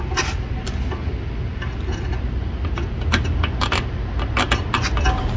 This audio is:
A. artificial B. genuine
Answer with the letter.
B